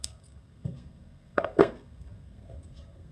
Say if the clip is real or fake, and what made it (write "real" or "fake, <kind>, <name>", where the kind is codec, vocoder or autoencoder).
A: fake, codec, SNAC